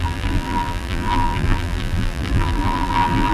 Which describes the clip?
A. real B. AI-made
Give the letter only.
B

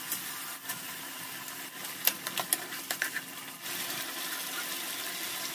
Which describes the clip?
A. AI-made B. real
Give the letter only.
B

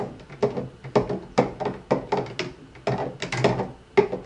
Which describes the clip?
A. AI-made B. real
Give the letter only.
B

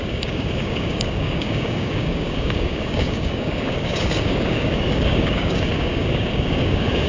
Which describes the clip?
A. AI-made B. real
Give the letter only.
A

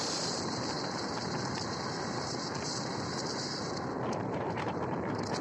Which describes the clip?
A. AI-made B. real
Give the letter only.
A